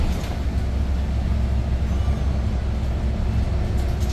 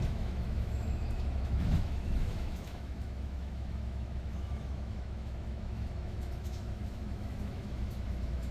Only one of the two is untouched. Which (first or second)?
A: first